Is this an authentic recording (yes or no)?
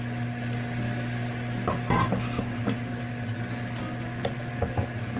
yes